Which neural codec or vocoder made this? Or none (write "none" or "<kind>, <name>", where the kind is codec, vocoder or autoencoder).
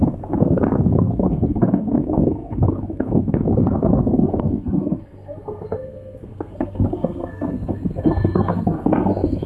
codec, SNAC